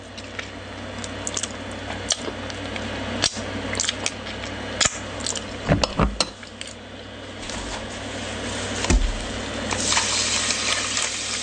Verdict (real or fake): real